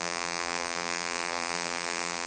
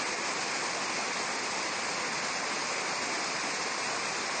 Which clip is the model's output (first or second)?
first